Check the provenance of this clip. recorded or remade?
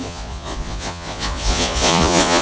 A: remade